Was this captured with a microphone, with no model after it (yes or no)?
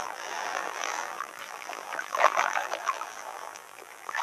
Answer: no